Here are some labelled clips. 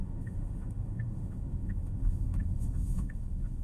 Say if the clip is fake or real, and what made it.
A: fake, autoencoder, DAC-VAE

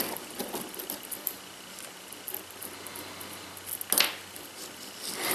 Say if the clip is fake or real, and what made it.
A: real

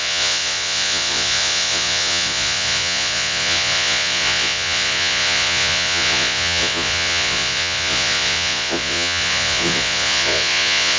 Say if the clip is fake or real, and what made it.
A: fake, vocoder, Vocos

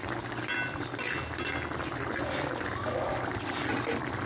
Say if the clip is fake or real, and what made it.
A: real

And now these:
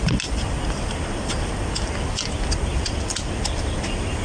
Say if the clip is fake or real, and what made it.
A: real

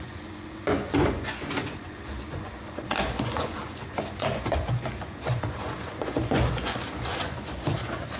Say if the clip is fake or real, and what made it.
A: fake, vocoder, Vocos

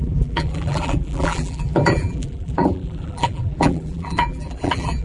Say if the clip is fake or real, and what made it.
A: fake, vocoder, BigVGAN v2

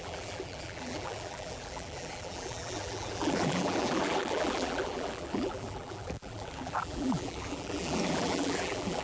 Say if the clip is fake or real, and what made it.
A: fake, vocoder, BigVGAN v2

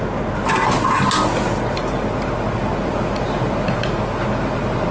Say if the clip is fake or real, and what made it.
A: real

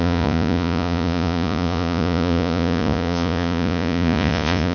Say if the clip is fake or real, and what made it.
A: fake, vocoder, Vocos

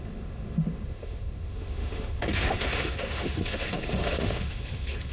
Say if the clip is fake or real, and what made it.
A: fake, autoencoder, DAC-VAE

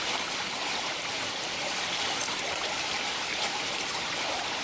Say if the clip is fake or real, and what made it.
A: fake, vocoder, BigVGAN v2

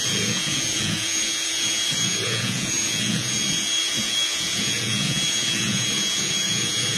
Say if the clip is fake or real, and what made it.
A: fake, vocoder, Vocos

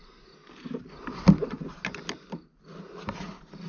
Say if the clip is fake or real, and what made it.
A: real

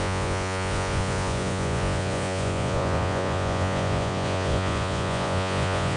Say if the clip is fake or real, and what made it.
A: fake, vocoder, Vocos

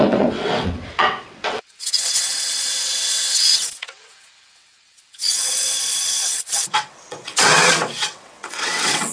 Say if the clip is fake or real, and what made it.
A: fake, vocoder, WaveNeXt